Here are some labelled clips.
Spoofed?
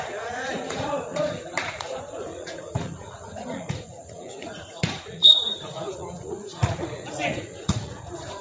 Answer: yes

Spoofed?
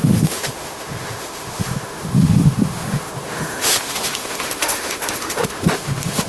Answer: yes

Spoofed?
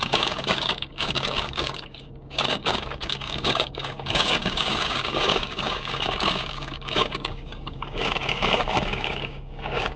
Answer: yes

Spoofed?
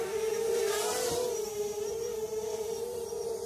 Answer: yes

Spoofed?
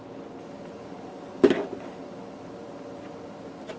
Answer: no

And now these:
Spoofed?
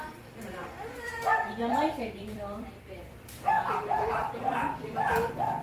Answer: yes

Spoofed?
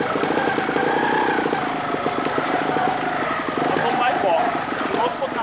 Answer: no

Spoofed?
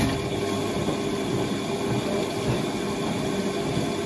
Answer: no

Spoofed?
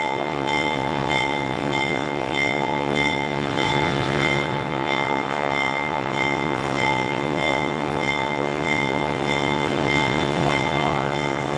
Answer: yes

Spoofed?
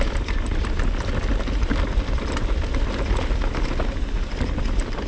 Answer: no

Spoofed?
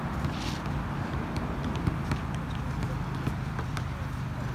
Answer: no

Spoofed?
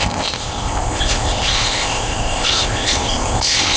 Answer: yes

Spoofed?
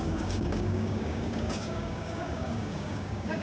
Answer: yes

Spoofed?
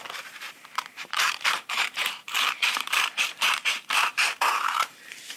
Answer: yes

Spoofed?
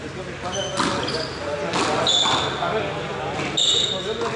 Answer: no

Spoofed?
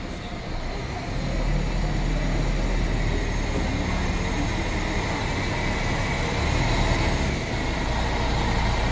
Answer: no